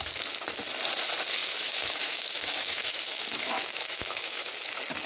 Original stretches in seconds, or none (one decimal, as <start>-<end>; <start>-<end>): 0.0-1.4; 4.5-5.1